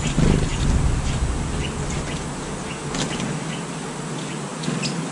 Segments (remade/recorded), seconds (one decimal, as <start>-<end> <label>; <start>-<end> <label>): 0.0-5.1 recorded